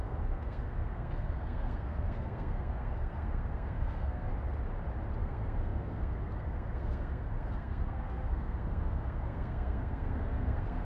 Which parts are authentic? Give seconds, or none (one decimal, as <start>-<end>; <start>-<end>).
4.3-5.2